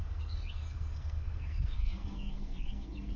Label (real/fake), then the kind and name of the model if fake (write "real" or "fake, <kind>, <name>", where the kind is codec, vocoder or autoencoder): fake, codec, SNAC